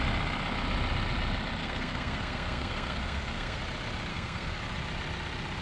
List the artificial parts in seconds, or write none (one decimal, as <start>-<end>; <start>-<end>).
1.6-3.6; 4.1-4.6